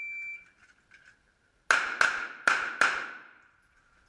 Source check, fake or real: real